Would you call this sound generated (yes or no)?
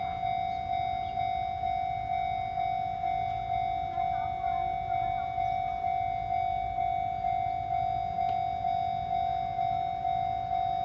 no